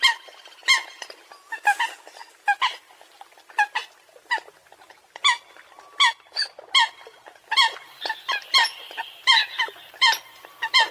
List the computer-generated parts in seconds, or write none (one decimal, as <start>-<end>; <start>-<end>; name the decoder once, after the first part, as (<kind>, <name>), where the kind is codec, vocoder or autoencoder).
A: none